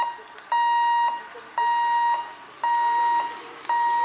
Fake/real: real